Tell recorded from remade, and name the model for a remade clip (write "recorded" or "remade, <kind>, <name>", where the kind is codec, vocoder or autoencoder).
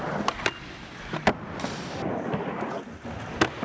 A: recorded